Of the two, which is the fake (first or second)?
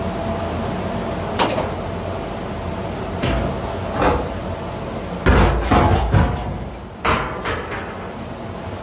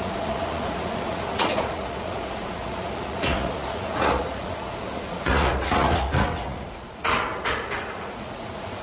second